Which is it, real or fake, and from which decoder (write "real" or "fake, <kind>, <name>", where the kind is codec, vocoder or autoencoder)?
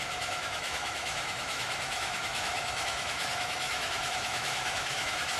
fake, autoencoder, DAC-VAE